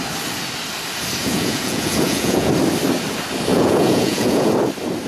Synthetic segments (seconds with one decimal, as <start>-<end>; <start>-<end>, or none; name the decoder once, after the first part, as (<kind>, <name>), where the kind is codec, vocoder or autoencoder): 1.2-2.5 (vocoder, Vocos); 3.5-4.5